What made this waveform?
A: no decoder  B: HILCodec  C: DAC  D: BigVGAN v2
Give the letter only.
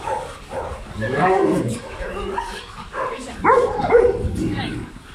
C